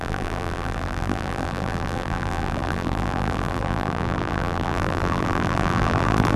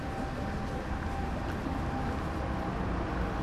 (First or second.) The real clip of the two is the second